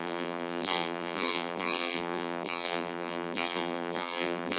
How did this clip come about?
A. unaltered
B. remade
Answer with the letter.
B